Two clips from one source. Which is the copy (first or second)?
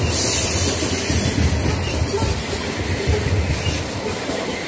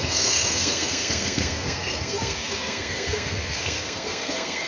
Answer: second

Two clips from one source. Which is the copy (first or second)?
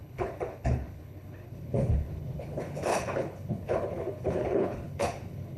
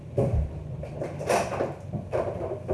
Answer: first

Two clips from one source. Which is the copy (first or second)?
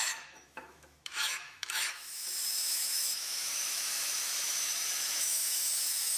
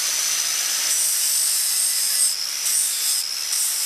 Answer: first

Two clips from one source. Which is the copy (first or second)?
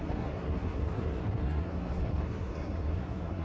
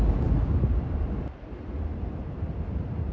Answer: first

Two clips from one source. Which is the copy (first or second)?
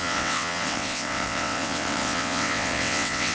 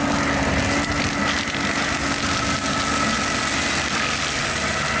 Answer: first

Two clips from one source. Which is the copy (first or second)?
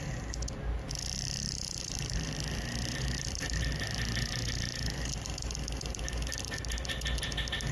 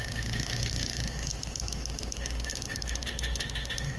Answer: second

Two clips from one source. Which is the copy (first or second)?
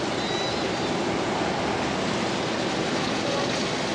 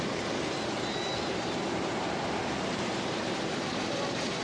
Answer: second